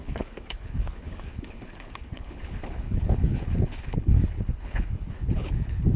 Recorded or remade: remade